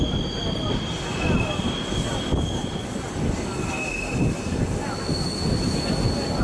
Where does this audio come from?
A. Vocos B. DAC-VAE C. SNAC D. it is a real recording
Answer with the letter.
D